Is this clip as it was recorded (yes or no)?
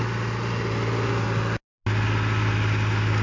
yes